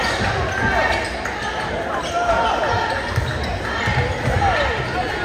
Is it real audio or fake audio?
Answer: real